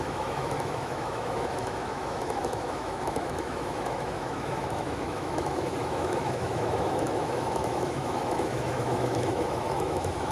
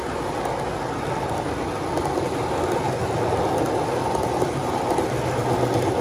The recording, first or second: second